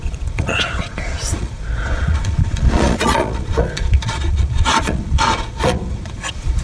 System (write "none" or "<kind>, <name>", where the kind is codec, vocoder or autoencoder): vocoder, Vocos